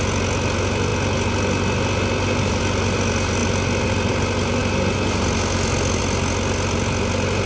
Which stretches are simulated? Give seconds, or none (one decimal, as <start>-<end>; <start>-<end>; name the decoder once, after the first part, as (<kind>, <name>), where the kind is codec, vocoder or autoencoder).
none